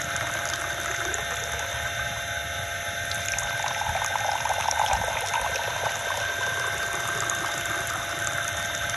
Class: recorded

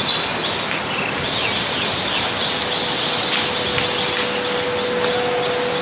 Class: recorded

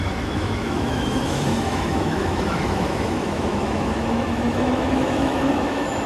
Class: remade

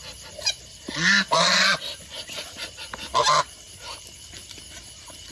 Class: recorded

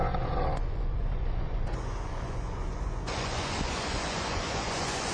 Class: remade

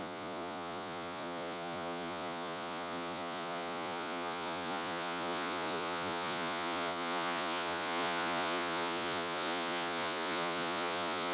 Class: remade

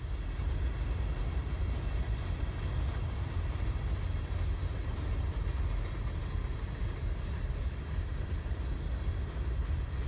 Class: recorded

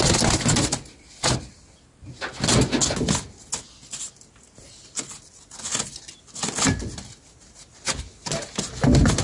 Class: recorded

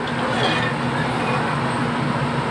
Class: recorded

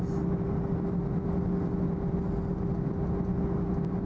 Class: recorded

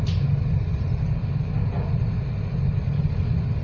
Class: recorded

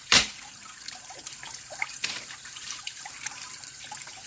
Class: remade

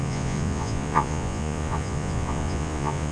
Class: remade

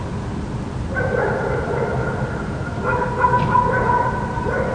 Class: recorded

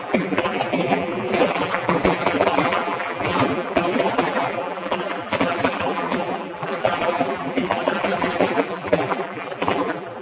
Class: remade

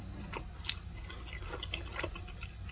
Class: recorded